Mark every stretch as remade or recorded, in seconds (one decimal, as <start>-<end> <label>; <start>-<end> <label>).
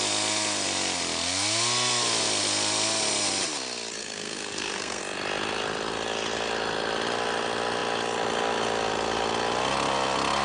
0.0-4.0 recorded; 4.0-5.0 remade; 5.0-10.4 recorded